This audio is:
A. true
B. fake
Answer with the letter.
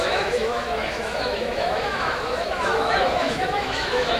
B